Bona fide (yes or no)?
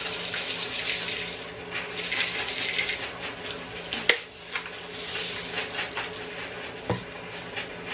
yes